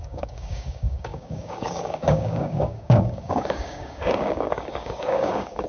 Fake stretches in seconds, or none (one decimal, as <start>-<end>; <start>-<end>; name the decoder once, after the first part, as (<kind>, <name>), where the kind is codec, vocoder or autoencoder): 0.0-5.7 (codec, DAC)